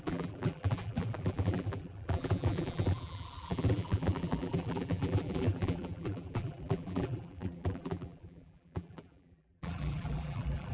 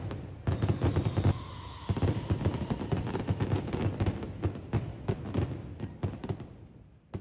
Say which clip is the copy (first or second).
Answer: first